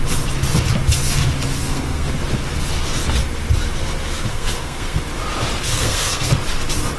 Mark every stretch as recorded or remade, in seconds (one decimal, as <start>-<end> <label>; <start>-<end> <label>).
0.0-1.6 recorded; 1.6-2.1 remade; 2.1-4.3 recorded; 4.3-5.0 remade; 5.0-5.7 recorded; 5.7-6.3 remade; 6.3-7.0 recorded